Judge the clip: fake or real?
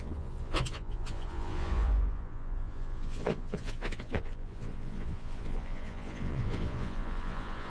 fake